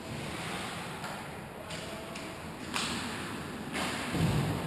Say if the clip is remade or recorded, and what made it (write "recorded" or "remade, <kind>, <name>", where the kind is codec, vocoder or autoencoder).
recorded